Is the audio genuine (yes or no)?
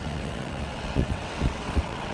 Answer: no